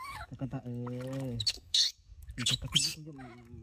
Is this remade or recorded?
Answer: remade